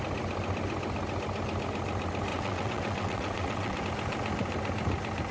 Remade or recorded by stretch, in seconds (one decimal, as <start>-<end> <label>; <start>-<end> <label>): 0.0-2.3 recorded; 2.3-3.8 remade; 3.8-5.3 recorded